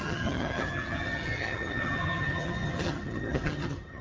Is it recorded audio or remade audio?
remade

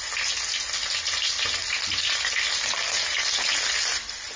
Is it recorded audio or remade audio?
recorded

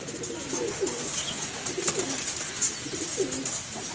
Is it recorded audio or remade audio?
recorded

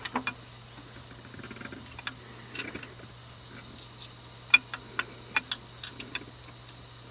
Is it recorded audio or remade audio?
recorded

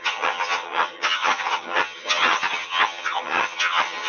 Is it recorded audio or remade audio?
remade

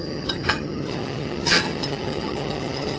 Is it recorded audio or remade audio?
remade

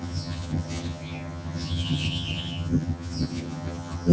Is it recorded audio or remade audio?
remade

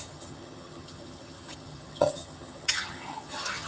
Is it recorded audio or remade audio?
remade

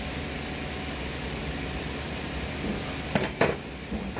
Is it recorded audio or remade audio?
recorded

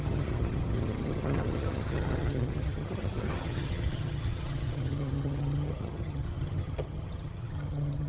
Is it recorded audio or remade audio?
remade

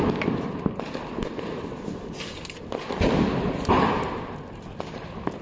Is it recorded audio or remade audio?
recorded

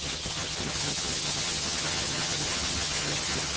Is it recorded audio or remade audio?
remade